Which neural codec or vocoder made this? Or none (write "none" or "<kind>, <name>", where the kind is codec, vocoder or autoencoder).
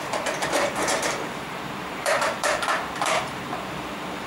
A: vocoder, BigVGAN v2